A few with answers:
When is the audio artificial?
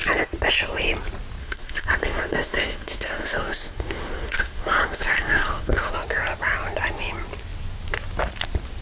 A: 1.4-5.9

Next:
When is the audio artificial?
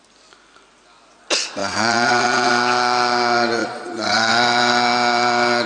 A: 1.6-2.5; 3.6-4.3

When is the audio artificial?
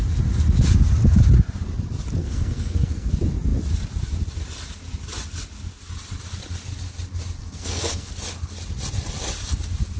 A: 2.2-3.1; 7.4-8.1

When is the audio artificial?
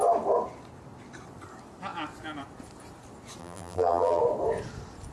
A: 3.4-4.2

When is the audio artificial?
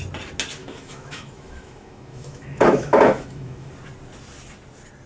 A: 0.6-3.7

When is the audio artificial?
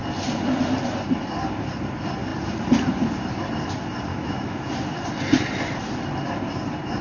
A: 4.1-4.6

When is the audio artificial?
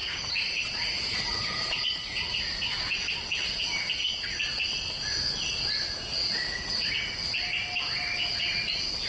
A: 0.0-2.4; 6.2-6.9